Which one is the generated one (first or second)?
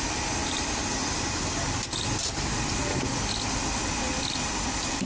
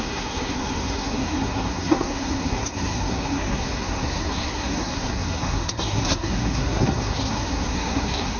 second